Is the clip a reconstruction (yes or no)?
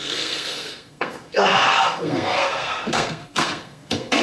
yes